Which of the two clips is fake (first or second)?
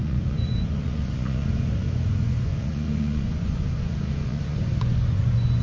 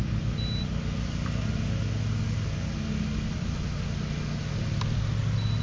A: first